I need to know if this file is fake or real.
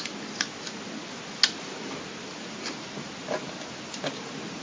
real